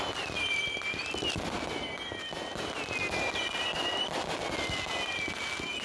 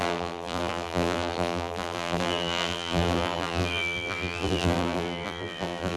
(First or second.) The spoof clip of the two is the second